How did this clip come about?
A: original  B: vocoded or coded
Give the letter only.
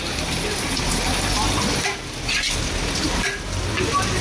A